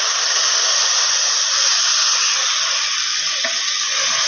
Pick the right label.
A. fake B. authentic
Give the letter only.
B